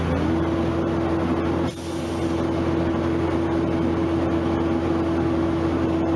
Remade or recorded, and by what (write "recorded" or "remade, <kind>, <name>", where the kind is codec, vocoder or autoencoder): recorded